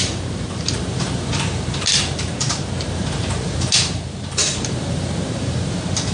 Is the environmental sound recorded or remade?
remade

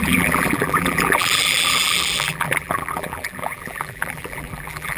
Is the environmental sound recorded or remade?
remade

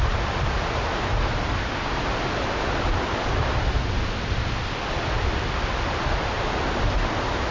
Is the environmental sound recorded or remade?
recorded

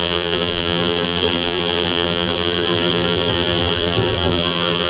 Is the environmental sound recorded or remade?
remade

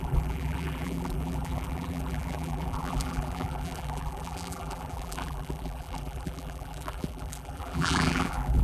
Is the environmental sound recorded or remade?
remade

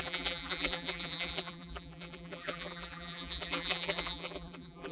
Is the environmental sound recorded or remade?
remade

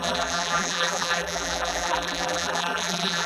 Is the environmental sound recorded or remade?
remade